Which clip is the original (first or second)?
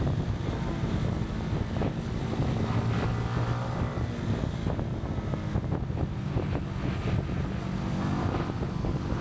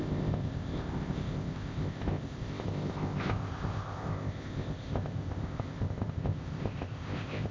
first